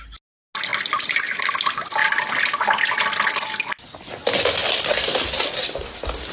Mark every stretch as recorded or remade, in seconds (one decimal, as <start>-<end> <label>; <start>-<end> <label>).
0.0-4.6 recorded; 4.6-5.3 remade; 5.3-6.3 recorded